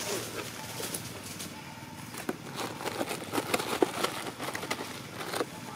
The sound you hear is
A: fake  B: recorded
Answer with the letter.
B